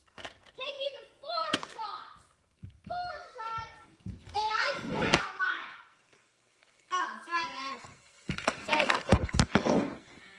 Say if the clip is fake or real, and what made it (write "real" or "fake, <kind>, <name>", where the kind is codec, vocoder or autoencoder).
fake, codec, SNAC